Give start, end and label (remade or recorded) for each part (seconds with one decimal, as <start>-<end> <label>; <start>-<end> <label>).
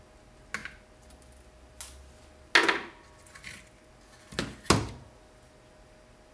0.0-6.3 recorded